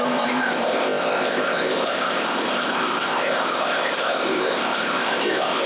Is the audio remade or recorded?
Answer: remade